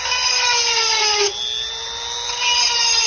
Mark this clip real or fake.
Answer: real